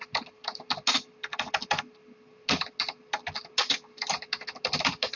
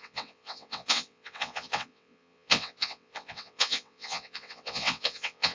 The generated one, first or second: second